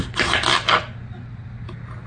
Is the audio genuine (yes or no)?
yes